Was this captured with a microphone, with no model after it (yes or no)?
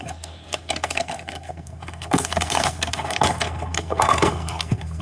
no